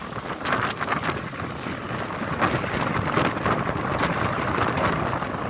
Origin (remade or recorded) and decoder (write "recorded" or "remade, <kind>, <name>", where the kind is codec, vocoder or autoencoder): recorded